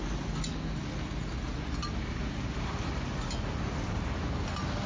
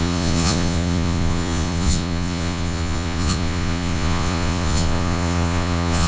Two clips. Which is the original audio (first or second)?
first